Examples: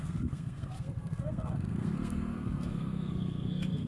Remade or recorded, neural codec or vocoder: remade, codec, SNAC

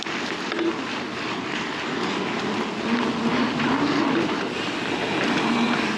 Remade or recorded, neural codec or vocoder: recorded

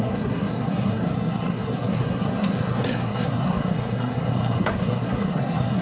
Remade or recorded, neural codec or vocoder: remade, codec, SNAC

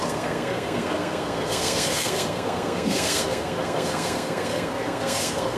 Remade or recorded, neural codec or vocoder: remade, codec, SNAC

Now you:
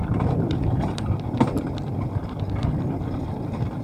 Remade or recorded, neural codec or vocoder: recorded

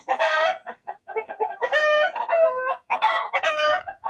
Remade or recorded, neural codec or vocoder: remade, codec, SNAC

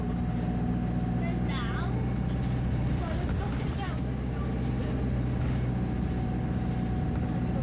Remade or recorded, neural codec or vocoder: recorded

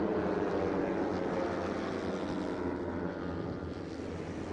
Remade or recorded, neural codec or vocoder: recorded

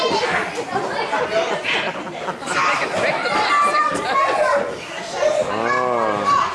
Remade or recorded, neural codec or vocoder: recorded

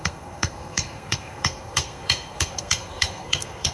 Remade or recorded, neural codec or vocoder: remade, codec, SNAC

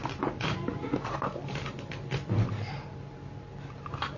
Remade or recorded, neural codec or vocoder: recorded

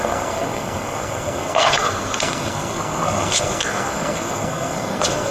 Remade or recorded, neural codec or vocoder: remade, codec, SNAC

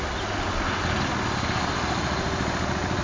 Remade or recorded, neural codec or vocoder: recorded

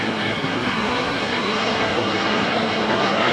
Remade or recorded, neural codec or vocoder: remade, codec, SNAC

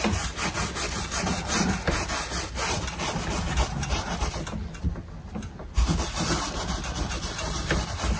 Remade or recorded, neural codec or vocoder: recorded